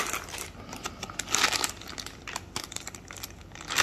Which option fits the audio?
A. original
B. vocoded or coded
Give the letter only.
A